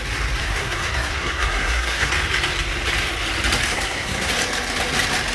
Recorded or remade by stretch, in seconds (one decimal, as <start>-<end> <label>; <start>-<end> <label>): 0.0-0.4 recorded; 0.4-2.1 remade; 2.1-3.7 recorded; 3.7-4.3 remade; 4.3-5.3 recorded